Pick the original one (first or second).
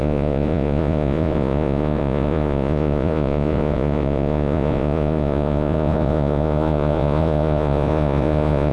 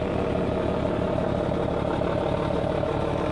second